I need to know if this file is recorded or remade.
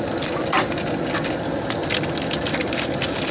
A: recorded